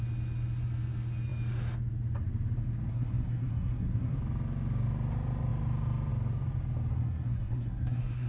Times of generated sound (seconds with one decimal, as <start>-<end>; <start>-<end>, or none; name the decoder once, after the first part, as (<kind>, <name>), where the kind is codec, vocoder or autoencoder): 2.9-4.2 (codec, SNAC); 6.9-8.3